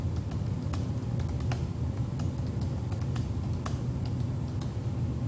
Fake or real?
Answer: real